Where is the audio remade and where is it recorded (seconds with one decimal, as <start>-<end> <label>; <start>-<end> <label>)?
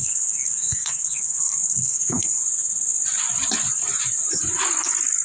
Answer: 0.0-2.4 remade; 2.4-5.2 recorded